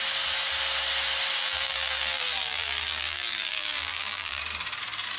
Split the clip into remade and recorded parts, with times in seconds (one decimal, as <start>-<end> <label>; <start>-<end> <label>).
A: 0.0-1.4 recorded; 1.4-4.4 remade; 4.4-5.2 recorded